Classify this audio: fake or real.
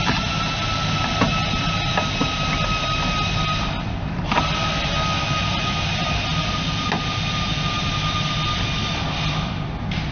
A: real